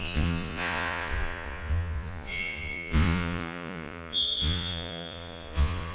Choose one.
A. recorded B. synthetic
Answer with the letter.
B